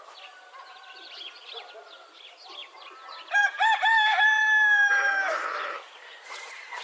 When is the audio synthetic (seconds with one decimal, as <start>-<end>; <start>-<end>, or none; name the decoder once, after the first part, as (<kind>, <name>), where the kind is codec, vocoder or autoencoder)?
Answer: 2.6-6.8 (vocoder, BigVGAN v2)

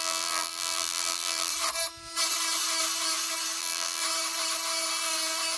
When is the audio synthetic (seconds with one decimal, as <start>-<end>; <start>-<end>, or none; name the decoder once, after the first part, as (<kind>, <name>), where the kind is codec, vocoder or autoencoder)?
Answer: 0.0-1.5 (vocoder, BigVGAN v2); 3.6-4.0

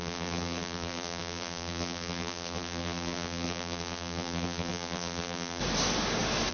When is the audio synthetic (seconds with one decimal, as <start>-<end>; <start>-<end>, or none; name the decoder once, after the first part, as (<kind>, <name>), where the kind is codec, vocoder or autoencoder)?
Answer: 0.0-5.6 (vocoder, BigVGAN v2)

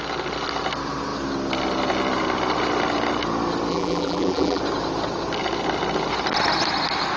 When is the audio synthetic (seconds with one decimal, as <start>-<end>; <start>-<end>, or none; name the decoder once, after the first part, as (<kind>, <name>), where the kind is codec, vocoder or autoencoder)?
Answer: 3.7-4.6 (vocoder, BigVGAN v2)

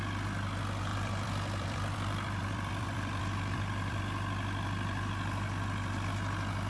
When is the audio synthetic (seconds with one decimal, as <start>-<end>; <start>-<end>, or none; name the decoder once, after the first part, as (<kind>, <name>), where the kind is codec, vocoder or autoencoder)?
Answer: 0.9-4.0 (vocoder, BigVGAN v2)

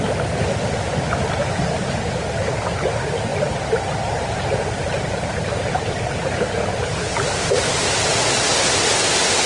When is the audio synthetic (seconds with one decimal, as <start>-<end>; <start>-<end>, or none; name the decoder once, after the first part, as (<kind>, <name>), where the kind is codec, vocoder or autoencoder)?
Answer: 1.4-2.0 (vocoder, BigVGAN v2)

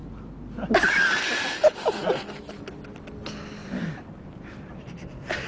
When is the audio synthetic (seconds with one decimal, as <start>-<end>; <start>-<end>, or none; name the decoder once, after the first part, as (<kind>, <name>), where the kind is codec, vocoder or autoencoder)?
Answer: 3.6-5.5 (vocoder, BigVGAN v2)